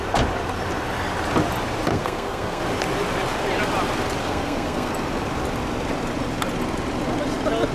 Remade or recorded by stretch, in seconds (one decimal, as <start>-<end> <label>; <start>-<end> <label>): 0.0-1.9 recorded; 1.9-2.6 remade; 2.6-4.2 recorded; 4.2-4.9 remade; 4.9-7.7 recorded